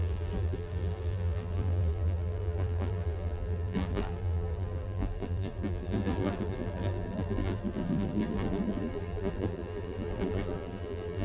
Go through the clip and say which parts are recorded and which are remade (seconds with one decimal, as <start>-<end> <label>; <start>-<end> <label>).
0.0-11.2 remade

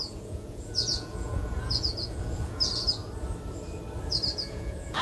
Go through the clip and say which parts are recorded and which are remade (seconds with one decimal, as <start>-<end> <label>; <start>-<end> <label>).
0.0-3.0 remade; 3.0-4.1 recorded; 4.1-5.0 remade

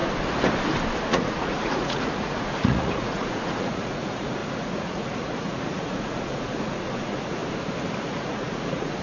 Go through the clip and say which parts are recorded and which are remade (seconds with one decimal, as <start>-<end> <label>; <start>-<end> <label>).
0.0-1.0 recorded; 1.0-7.4 remade; 7.4-8.0 recorded; 8.0-9.0 remade

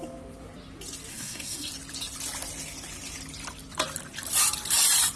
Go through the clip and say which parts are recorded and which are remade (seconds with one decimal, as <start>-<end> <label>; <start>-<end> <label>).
0.0-1.1 recorded; 1.1-1.7 remade; 1.7-5.2 recorded

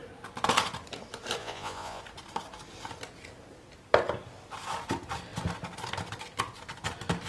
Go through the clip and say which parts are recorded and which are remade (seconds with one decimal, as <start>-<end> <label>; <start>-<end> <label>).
0.0-1.4 recorded; 1.4-2.0 remade; 2.0-7.3 recorded

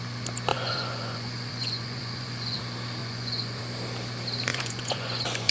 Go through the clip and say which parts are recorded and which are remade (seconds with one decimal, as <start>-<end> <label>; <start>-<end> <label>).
0.0-0.5 recorded; 0.5-2.6 remade; 2.6-3.0 recorded; 3.0-3.6 remade; 3.6-4.5 recorded; 4.5-5.5 remade